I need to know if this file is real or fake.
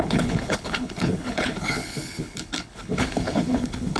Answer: fake